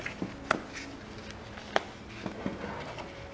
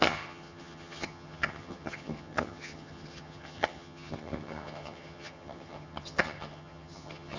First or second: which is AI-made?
second